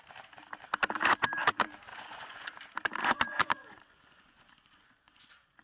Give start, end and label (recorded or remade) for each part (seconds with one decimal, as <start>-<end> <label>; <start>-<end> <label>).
0.0-1.9 recorded; 1.9-2.5 remade; 2.5-3.0 recorded; 3.0-5.6 remade